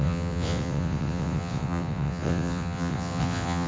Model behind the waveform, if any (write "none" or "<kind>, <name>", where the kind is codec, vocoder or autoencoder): vocoder, WaveNeXt